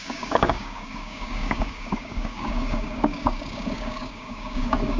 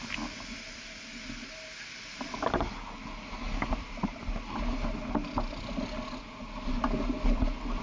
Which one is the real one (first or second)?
second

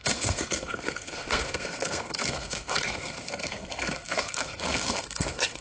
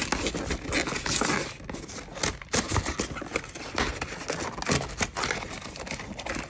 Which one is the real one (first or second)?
second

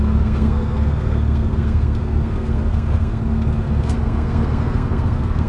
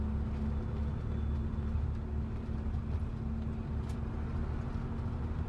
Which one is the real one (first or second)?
second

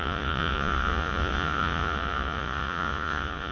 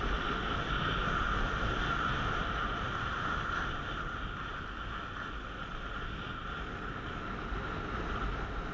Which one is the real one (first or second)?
second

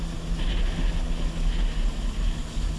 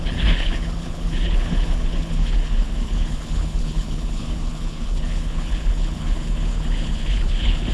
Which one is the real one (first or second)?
first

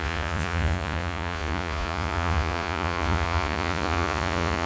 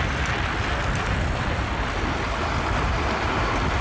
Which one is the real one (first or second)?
second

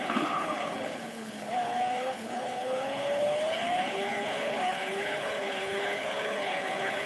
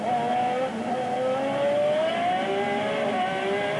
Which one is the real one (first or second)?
second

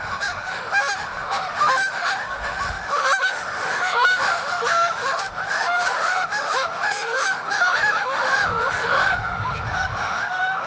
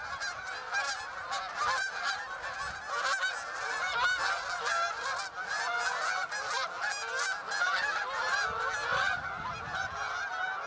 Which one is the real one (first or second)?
second